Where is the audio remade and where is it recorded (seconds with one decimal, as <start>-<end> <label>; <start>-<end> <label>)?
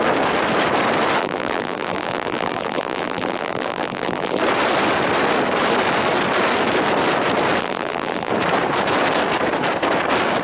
0.0-1.2 recorded; 1.2-4.4 remade; 4.4-7.6 recorded; 7.6-8.3 remade; 8.3-10.4 recorded